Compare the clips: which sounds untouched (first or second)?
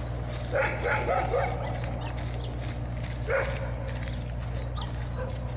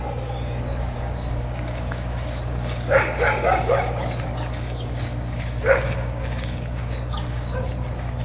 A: first